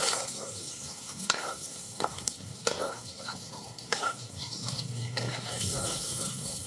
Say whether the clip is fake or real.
fake